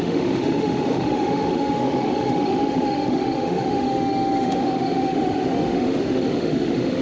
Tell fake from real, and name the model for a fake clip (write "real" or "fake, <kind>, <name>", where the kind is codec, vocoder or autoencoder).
fake, autoencoder, DAC-VAE